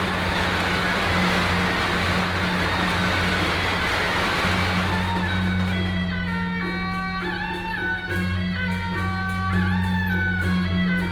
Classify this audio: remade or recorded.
recorded